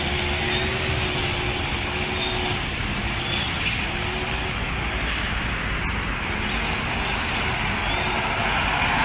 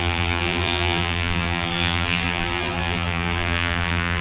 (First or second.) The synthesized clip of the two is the second